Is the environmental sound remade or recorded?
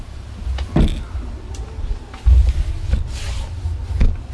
recorded